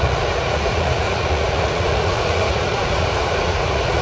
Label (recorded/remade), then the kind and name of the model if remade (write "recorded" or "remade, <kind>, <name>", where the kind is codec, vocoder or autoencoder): remade, vocoder, Vocos